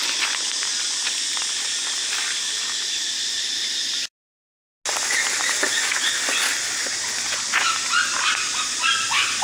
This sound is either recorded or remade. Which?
recorded